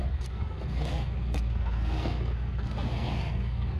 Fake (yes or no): yes